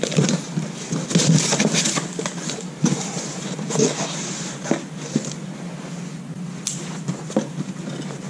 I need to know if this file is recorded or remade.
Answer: recorded